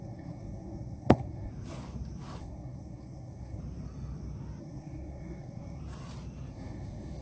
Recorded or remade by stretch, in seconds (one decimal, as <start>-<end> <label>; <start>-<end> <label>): 0.0-1.5 remade; 1.5-2.4 recorded; 2.4-3.6 remade; 3.6-4.6 recorded; 4.6-5.8 remade; 5.8-6.5 recorded; 6.5-7.2 remade